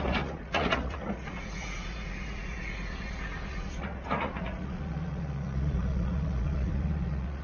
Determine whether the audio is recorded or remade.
remade